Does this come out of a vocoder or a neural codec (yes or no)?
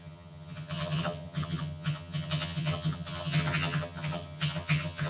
yes